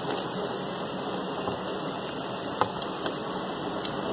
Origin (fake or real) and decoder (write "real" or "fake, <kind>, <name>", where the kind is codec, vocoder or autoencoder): real